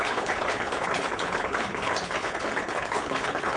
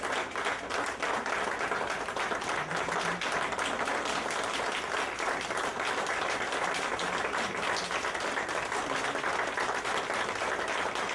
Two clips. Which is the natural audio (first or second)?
second